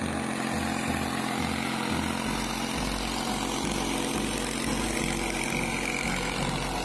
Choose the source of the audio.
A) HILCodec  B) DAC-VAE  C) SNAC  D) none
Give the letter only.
D